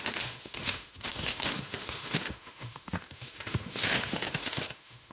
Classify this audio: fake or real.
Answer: fake